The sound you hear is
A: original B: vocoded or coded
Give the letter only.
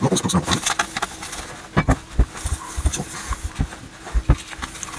A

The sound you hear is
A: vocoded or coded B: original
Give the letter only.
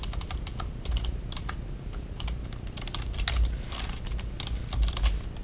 B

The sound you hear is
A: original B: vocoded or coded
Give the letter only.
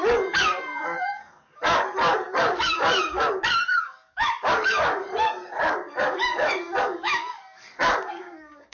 B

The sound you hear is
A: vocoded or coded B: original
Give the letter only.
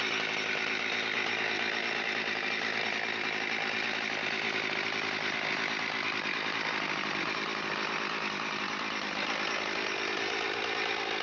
B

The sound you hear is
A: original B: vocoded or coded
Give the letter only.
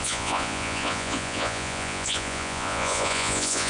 B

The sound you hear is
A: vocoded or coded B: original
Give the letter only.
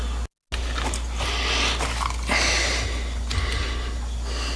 B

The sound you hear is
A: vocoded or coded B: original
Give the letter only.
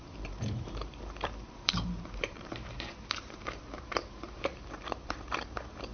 A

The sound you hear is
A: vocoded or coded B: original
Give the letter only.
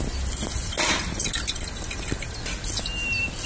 B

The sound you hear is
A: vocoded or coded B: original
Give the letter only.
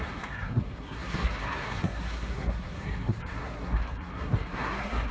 A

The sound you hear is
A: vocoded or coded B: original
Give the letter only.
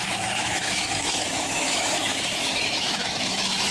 A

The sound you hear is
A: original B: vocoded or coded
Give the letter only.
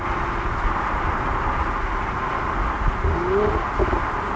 A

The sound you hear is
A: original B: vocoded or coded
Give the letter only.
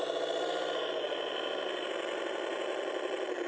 A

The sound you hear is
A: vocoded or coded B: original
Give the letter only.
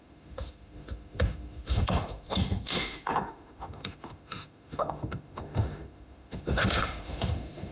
A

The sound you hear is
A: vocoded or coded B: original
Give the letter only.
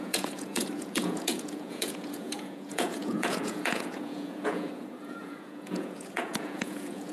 A